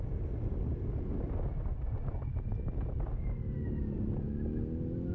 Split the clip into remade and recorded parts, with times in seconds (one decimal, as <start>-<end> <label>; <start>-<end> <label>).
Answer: 0.0-5.1 recorded